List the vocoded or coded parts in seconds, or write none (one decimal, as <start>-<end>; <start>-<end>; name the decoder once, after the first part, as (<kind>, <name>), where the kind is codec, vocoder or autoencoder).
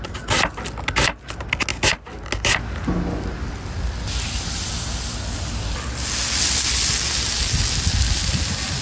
none